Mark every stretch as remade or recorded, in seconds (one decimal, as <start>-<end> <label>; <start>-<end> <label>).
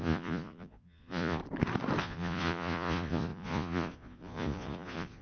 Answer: 0.0-1.4 remade; 1.4-2.0 recorded; 2.0-5.2 remade